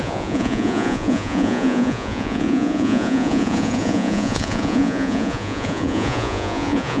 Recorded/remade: remade